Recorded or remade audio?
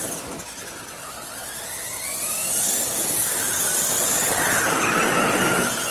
recorded